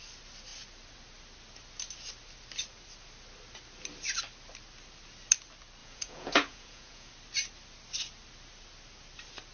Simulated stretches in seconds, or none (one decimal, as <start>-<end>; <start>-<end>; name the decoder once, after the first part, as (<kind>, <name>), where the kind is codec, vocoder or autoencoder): 5.8-7.1 (vocoder, Vocos)